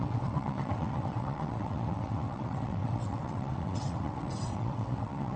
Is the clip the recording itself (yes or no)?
no